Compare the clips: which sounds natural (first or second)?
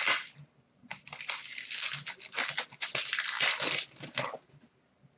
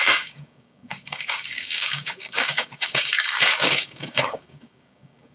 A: first